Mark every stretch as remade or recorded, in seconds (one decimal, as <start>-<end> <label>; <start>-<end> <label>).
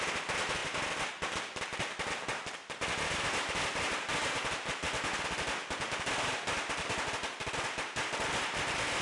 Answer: 0.0-9.0 recorded